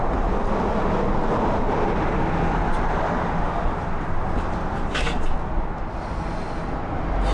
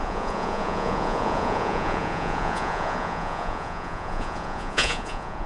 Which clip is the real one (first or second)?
first